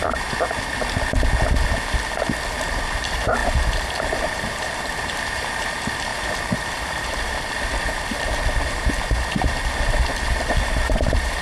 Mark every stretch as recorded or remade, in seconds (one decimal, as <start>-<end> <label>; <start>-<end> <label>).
0.0-2.5 recorded; 2.5-11.4 remade